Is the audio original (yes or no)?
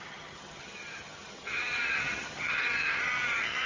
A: no